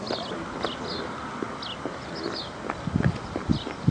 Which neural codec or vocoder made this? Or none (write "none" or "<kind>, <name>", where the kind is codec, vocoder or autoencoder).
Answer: none